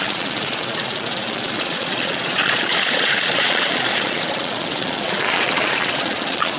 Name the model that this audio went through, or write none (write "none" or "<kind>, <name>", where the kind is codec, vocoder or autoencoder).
vocoder, Vocos